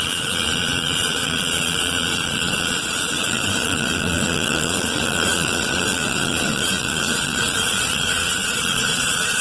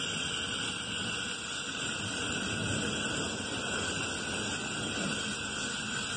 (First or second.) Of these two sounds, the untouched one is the second